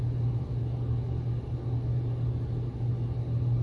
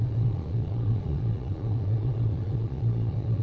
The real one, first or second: first